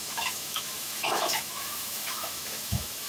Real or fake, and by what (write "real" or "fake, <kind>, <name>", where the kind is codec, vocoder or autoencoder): fake, autoencoder, DAC-VAE